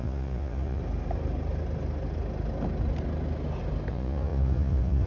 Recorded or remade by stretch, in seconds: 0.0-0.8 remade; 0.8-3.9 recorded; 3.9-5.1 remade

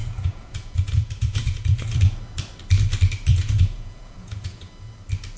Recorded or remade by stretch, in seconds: 0.0-1.8 remade; 1.8-3.3 recorded; 3.3-4.7 remade; 4.7-5.4 recorded

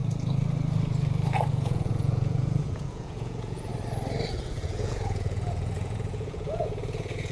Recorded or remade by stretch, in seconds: 0.0-1.5 recorded; 1.5-3.7 remade; 3.7-4.3 recorded; 4.3-7.3 remade

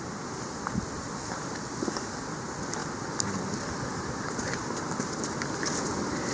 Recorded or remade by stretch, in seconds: 0.0-6.3 recorded

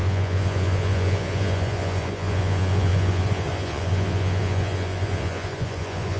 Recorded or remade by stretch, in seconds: 0.0-6.2 remade

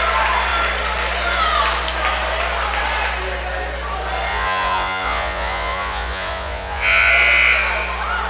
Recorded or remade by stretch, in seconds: 0.0-4.3 recorded; 4.3-7.1 remade; 7.1-8.3 recorded